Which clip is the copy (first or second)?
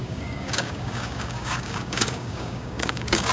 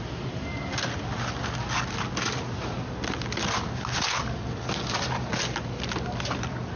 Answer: first